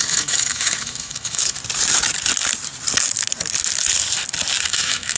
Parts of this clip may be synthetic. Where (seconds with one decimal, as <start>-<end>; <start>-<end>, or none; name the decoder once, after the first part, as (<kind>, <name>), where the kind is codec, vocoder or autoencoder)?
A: 0.0-1.6 (autoencoder, DAC-VAE); 4.7-5.2